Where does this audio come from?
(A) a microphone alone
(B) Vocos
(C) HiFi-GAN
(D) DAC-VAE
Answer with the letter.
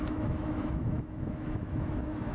D